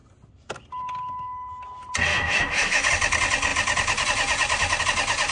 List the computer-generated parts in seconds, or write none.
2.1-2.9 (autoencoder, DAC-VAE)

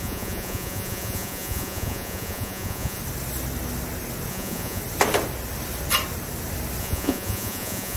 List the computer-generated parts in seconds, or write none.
0.0-3.0 (vocoder, Vocos); 4.3-4.8; 6.8-8.0

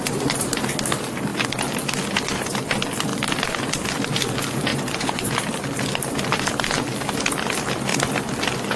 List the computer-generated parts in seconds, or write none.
4.7-5.3 (vocoder, Vocos)

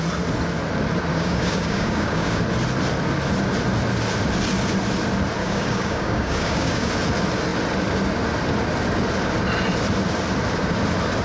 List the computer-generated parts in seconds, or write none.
1.1-2.4 (codec, DAC); 5.4-6.9

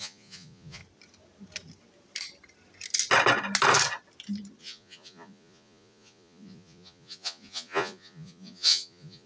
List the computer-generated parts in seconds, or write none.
0.0-0.8 (vocoder, Vocos); 4.6-9.3